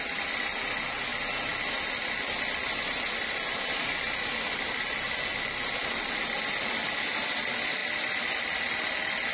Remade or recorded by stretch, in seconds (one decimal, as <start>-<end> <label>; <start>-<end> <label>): 0.0-9.3 recorded